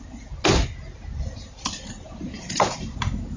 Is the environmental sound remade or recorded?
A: recorded